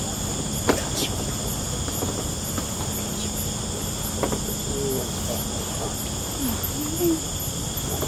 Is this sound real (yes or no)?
yes